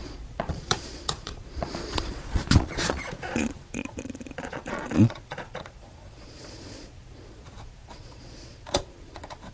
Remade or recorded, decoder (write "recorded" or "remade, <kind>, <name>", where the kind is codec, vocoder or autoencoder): remade, vocoder, Vocos